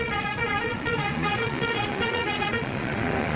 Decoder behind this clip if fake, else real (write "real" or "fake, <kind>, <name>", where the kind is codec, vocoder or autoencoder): fake, vocoder, Vocos